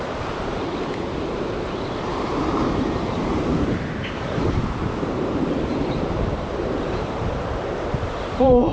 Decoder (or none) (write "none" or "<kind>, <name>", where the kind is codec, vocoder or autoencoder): vocoder, BigVGAN v2